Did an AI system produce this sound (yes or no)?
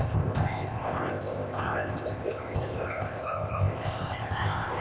yes